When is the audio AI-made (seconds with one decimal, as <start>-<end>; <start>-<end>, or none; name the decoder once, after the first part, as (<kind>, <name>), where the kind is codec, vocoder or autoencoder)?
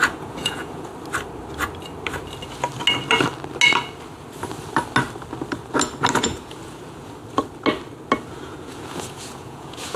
0.0-0.9 (vocoder, Vocos); 6.1-7.2; 8.2-10.0